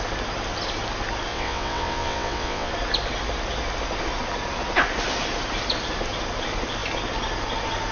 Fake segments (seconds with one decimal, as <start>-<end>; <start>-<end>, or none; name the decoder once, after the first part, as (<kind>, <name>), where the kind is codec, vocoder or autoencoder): 1.3-2.7 (vocoder, WaveNeXt)